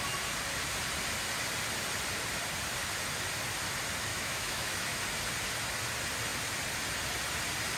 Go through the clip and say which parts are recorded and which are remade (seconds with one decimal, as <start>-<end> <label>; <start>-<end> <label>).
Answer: 0.0-4.1 recorded; 4.1-5.0 remade; 5.0-7.8 recorded